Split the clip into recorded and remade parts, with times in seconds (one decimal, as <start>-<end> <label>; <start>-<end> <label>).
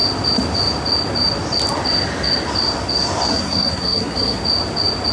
0.0-3.3 recorded; 3.3-4.4 remade; 4.4-5.1 recorded